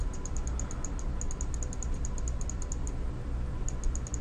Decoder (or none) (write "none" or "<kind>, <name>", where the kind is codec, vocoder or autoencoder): none